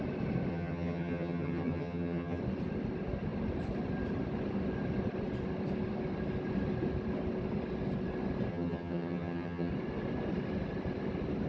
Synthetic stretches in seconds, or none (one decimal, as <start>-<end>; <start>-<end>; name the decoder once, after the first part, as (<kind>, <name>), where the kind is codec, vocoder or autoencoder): 0.5-2.4 (vocoder, HiFi-GAN); 8.5-9.7